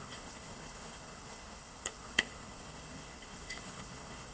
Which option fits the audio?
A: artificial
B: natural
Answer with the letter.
A